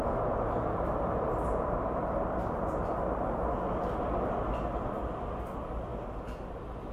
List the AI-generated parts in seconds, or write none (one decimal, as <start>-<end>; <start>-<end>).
none